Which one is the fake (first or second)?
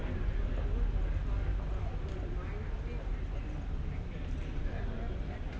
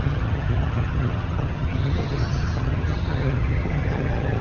second